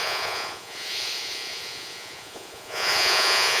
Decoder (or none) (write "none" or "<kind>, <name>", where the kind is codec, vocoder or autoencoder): vocoder, Vocos